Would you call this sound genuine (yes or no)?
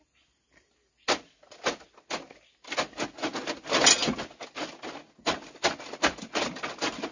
yes